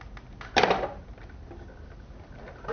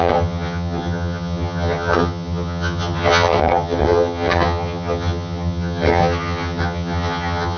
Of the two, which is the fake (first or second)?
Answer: second